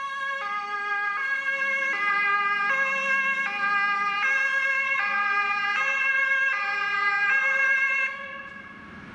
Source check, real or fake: real